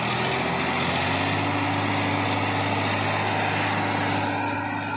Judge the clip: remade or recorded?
recorded